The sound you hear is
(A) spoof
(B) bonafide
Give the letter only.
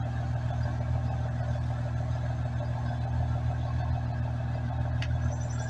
B